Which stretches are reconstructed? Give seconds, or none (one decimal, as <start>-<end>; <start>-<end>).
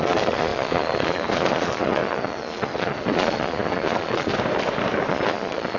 0.0-4.3; 5.1-5.8